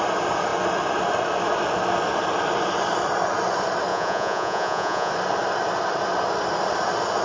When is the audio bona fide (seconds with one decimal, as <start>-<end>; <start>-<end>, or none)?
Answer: 0.0-3.9; 5.1-7.2